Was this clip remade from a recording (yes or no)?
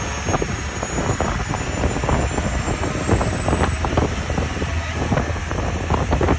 no